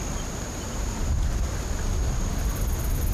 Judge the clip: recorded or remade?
recorded